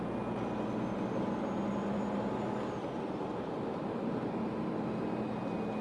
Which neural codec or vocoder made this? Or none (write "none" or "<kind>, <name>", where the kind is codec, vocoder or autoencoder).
none